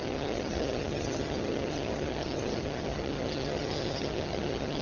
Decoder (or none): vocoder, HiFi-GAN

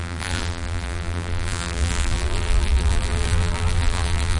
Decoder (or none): vocoder, BigVGAN v2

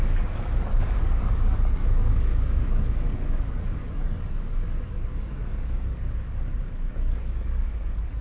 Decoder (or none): codec, DAC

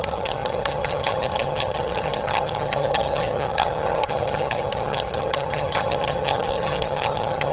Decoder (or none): vocoder, HiFi-GAN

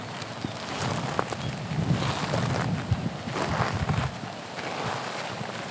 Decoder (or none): none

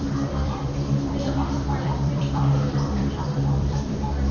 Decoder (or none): vocoder, BigVGAN v2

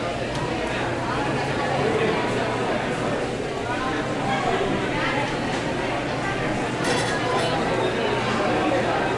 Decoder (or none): none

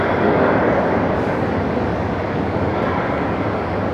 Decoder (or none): codec, DAC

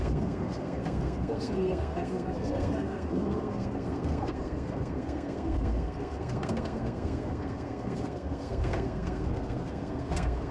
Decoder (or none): codec, SNAC